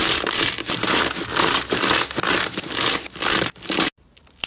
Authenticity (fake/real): real